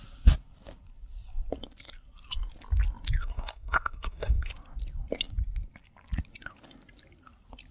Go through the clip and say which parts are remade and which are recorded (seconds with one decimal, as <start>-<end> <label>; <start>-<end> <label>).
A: 0.0-3.2 recorded; 3.2-4.5 remade; 4.5-7.7 recorded